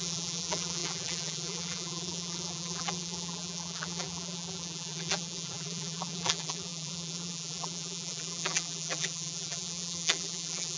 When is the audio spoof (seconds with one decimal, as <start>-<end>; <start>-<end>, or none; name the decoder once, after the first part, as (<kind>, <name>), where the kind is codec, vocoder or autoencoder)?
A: 0.0-10.8 (vocoder, BigVGAN v2)